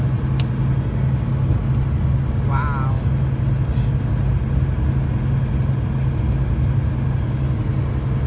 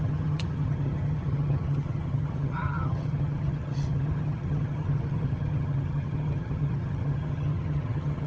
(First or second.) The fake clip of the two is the second